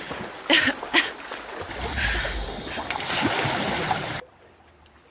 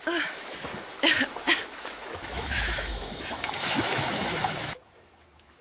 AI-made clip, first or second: second